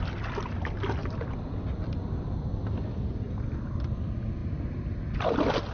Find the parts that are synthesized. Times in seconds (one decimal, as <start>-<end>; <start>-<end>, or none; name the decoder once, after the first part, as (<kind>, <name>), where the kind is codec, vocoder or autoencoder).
none